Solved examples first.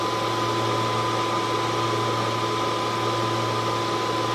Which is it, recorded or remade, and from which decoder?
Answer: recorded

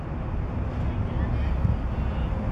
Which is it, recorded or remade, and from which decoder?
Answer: recorded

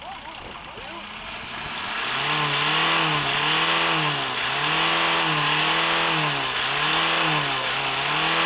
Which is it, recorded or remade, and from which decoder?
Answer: recorded